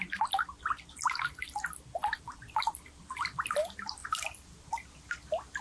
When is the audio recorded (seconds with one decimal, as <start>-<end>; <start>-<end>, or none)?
0.0-2.0; 3.1-4.0; 4.7-5.6